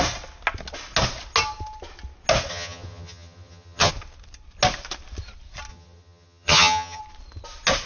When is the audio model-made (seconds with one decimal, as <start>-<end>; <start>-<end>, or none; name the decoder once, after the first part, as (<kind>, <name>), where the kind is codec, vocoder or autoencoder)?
2.5-3.9 (vocoder, HiFi-GAN); 5.7-7.0